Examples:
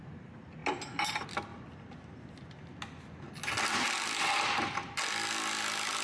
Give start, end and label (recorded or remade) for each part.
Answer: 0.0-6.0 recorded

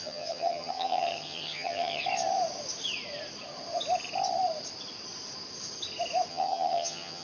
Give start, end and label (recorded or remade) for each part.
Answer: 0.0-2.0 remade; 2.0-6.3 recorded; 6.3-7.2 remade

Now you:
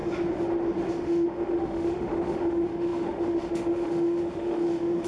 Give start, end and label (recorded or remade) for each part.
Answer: 0.0-0.9 recorded; 0.9-5.1 remade

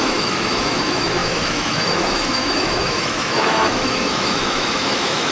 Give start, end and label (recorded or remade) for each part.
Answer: 0.0-5.3 remade

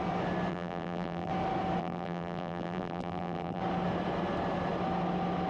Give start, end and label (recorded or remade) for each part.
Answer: 0.0-0.5 recorded; 0.5-1.3 remade; 1.3-1.8 recorded; 1.8-3.6 remade; 3.6-5.5 recorded